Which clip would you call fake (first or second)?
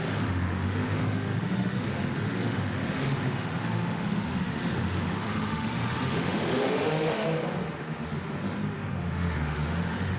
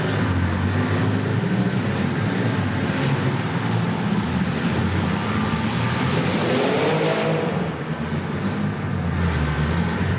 first